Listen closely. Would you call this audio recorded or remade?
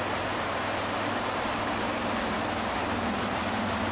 recorded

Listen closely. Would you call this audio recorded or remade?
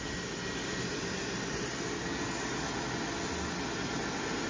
recorded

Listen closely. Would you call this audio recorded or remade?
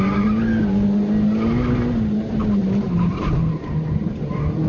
recorded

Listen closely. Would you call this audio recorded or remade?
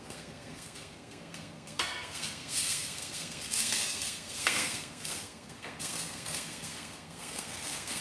remade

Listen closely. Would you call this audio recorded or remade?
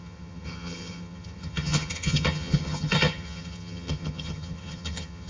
remade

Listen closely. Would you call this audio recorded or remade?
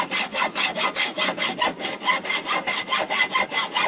recorded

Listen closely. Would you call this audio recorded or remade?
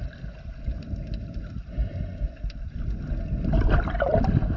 recorded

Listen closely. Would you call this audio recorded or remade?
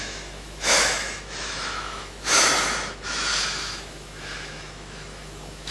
remade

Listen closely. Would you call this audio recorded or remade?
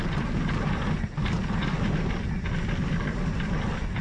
recorded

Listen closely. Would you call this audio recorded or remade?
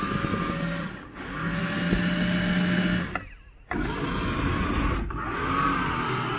recorded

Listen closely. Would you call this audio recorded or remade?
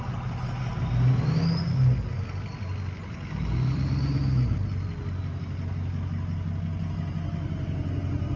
recorded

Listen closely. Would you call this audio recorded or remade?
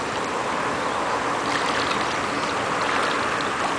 recorded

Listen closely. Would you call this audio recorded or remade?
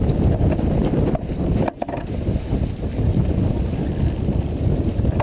recorded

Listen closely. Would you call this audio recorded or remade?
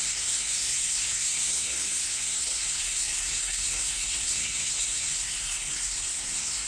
remade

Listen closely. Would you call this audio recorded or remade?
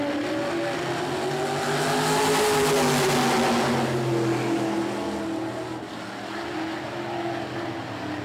recorded